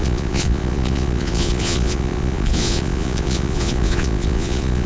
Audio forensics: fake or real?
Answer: fake